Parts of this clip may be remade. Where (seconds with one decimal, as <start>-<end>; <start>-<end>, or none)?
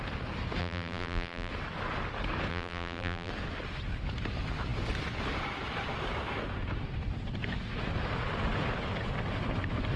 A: 0.6-1.5; 2.5-3.3